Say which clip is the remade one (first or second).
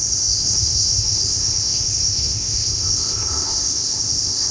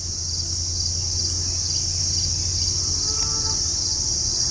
first